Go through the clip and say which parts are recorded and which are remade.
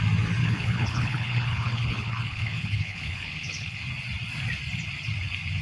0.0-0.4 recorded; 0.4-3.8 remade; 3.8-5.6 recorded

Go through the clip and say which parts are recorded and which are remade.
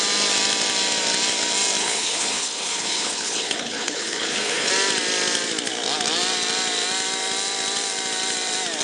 0.0-1.8 recorded; 1.8-4.7 remade; 4.7-8.8 recorded